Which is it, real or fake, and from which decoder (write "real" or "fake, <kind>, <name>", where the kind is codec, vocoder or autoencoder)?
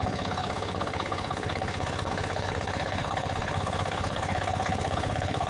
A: fake, codec, HILCodec